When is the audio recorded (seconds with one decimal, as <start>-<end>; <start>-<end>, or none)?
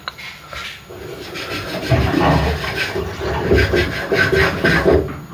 0.0-5.3